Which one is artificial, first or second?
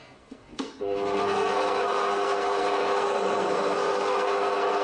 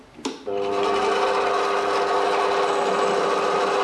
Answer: first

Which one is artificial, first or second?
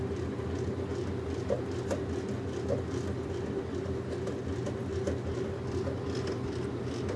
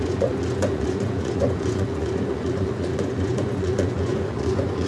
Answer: second